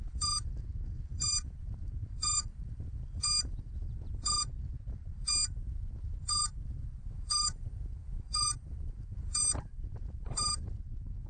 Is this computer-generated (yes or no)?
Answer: yes